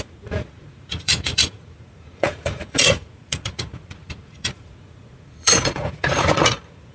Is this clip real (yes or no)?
no